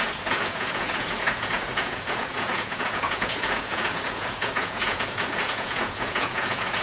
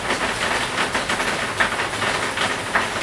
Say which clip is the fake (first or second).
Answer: first